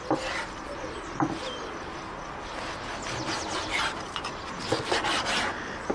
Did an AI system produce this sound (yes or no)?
no